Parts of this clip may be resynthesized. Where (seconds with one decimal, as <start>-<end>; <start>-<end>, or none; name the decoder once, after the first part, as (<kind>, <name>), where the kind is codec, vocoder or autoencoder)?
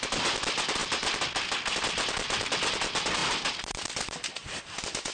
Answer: none